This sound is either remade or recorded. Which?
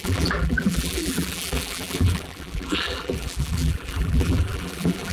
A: remade